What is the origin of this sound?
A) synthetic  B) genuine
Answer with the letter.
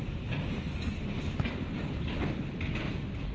B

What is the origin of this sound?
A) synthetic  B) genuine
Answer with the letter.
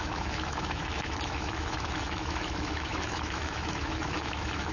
A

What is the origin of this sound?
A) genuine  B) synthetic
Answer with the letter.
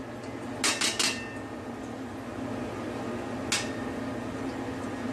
A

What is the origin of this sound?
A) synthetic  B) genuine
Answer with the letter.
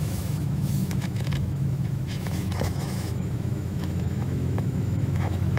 A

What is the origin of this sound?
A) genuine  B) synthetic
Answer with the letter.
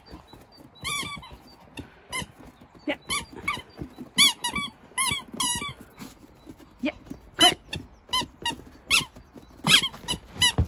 A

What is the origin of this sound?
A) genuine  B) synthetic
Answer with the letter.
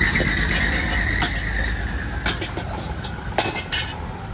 A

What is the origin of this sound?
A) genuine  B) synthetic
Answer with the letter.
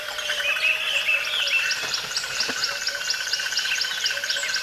A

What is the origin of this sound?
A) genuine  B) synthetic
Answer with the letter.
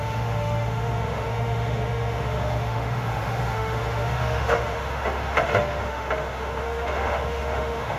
B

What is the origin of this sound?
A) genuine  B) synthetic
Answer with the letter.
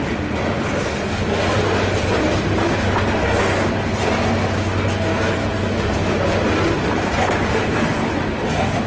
A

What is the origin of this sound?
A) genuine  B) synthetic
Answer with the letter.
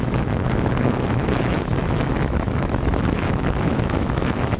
B